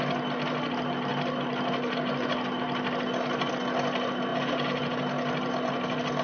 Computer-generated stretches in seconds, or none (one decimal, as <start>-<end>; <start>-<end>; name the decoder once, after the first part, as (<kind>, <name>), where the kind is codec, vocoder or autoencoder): 4.3-5.0 (vocoder, Vocos)